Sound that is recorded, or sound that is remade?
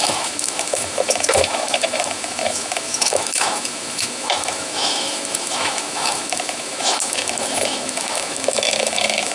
remade